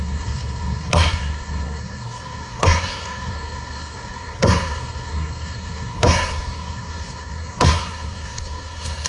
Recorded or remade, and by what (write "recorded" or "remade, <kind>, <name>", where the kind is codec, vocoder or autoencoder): remade, codec, SNAC